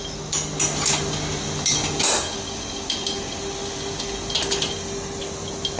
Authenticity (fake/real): real